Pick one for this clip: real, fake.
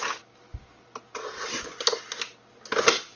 real